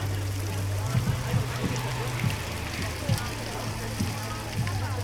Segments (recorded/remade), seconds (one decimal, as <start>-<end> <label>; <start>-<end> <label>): 0.0-5.0 recorded